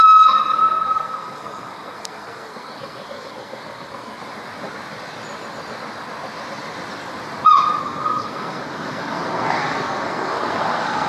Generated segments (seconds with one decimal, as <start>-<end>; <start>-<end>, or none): 0.0-4.2; 7.8-11.1